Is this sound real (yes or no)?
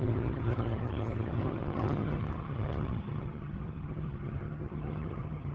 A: no